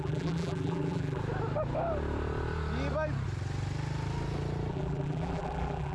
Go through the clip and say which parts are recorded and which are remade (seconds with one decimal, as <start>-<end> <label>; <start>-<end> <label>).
0.0-1.2 remade; 1.2-4.7 recorded; 4.7-5.9 remade